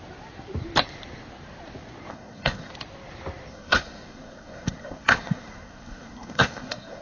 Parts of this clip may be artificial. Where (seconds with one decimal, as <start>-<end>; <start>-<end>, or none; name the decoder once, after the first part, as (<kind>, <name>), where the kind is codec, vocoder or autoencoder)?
2.1-2.7 (codec, SNAC); 3.5-7.0